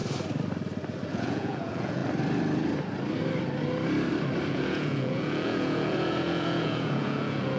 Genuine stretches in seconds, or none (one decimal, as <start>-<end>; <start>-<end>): 0.0-1.1; 2.0-4.5

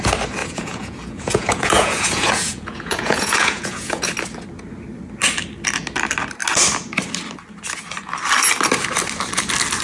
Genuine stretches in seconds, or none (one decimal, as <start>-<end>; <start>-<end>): 0.0-0.4; 4.1-9.8

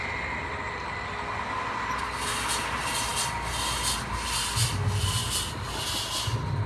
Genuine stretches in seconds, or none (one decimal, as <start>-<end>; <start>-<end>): 0.0-6.7

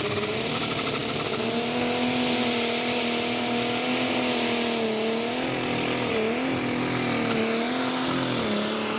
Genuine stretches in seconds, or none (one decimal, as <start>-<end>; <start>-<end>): 0.0-9.0